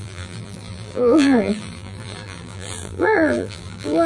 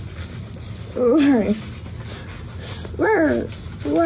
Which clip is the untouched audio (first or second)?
second